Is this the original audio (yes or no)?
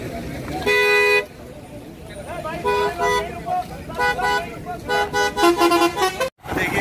yes